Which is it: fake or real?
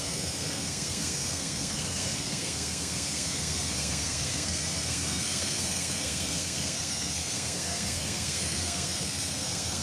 fake